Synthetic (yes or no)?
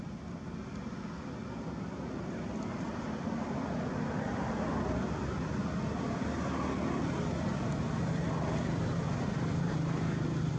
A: no